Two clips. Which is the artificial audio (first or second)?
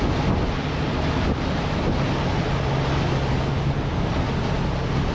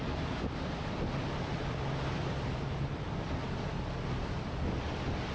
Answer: second